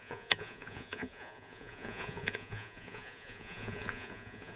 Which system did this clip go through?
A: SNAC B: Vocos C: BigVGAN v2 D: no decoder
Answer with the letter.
B